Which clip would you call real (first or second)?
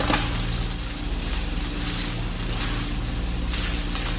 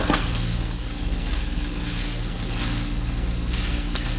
first